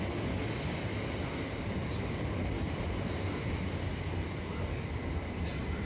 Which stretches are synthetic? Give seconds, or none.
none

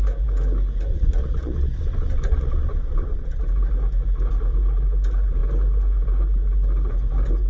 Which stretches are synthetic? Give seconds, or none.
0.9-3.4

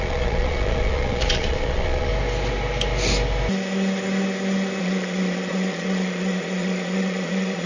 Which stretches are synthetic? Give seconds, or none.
0.0-2.1; 4.8-7.7

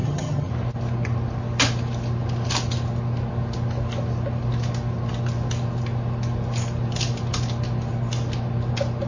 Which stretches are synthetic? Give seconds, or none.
0.0-0.5

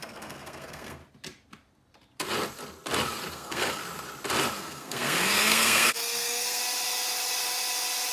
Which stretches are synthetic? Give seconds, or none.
0.0-1.0; 3.3-3.8; 4.6-6.6

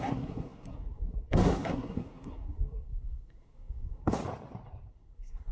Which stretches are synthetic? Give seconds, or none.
0.0-4.2; 4.9-5.5

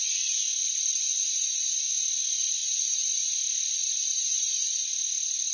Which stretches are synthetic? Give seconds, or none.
0.9-1.9; 2.6-3.3; 3.8-4.8

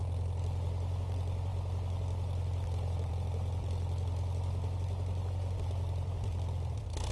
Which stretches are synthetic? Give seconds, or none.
none